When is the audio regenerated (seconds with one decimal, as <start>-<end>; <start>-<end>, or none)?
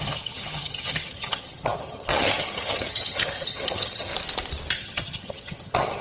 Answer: 0.0-4.1; 4.7-6.0